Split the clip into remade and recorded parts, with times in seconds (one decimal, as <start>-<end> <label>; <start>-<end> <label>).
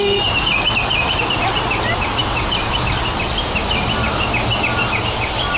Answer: 0.0-5.6 recorded